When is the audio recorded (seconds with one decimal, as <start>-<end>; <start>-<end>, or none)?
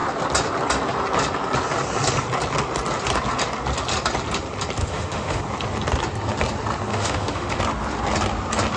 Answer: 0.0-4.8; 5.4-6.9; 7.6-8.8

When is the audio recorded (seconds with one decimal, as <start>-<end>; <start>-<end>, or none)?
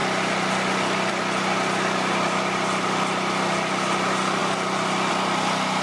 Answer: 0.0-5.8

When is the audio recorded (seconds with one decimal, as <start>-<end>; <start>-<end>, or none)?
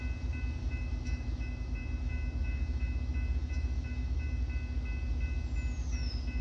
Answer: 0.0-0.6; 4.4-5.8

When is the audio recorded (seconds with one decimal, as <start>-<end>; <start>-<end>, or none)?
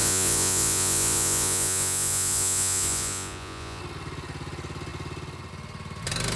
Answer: 3.8-6.4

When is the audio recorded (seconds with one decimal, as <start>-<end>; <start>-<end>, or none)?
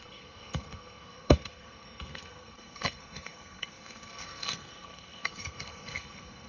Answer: none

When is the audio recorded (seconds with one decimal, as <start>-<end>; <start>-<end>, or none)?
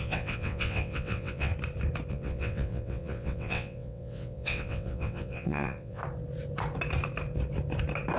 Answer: 1.5-2.1; 6.0-8.2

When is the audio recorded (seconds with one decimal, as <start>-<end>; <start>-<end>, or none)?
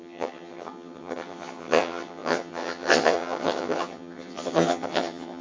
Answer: none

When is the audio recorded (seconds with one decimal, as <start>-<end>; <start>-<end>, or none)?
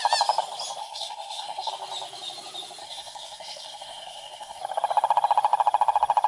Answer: 0.0-0.8; 1.7-2.8; 4.6-6.3